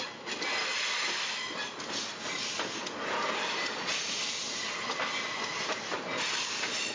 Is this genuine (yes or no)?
yes